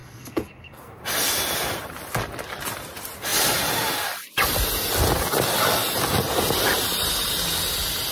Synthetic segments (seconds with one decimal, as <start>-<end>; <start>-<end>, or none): 0.0-1.0